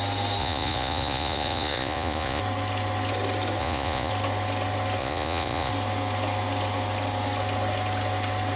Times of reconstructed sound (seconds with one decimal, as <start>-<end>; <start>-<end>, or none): 0.4-2.4; 3.6-4.1; 5.0-5.7